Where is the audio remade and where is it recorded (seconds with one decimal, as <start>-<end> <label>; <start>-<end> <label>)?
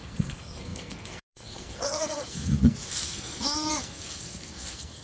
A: 0.0-5.0 remade